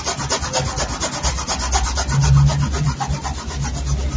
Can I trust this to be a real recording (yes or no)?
yes